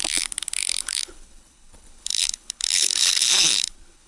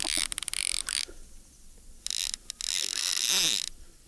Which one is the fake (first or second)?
first